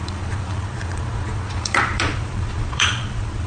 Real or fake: fake